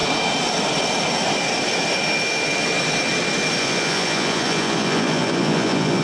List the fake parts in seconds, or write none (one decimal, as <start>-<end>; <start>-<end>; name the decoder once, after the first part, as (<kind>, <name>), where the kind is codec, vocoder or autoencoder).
3.6-6.0 (vocoder, Vocos)